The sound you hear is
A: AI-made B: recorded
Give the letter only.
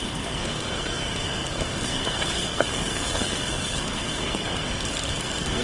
A